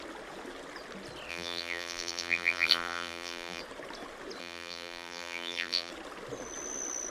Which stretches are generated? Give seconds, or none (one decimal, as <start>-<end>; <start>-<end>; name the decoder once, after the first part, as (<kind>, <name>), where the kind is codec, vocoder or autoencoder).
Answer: 1.3-3.6 (vocoder, BigVGAN v2); 4.4-5.9